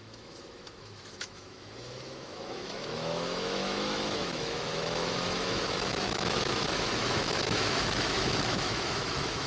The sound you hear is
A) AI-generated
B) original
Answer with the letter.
A